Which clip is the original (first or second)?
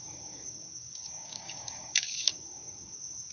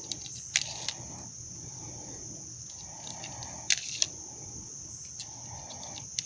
second